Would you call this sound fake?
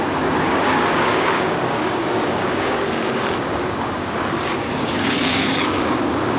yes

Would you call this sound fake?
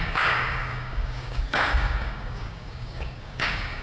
yes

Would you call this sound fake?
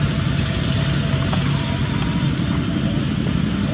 no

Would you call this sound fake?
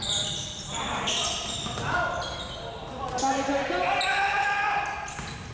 no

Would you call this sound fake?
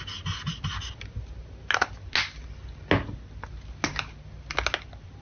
no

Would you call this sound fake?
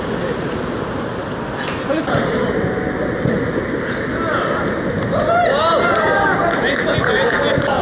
no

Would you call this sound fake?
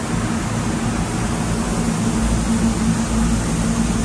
no